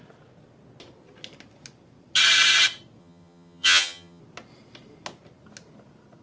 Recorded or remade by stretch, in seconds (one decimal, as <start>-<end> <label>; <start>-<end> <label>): 0.0-3.0 recorded; 3.0-4.2 remade; 4.2-6.2 recorded